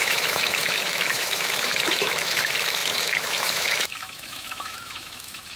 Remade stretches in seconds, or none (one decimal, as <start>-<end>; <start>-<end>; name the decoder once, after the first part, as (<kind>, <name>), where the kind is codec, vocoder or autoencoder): 0.0-5.6 (autoencoder, DAC-VAE)